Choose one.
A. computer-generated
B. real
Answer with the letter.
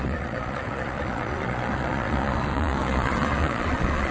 A